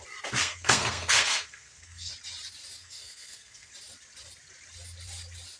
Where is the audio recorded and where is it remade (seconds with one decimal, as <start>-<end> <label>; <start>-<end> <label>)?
0.0-0.4 recorded; 0.4-2.1 remade; 2.1-2.8 recorded; 2.8-3.7 remade; 3.7-5.6 recorded